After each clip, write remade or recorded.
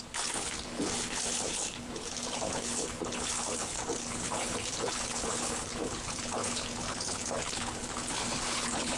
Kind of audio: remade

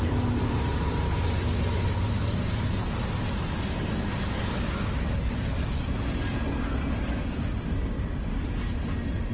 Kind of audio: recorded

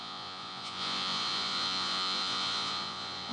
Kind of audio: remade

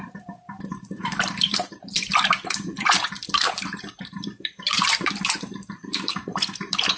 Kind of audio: remade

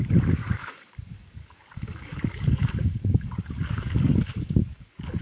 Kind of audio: remade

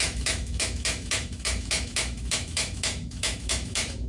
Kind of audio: remade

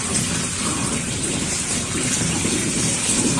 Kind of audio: recorded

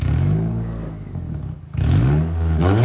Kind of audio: remade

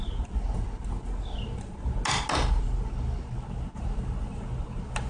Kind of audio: recorded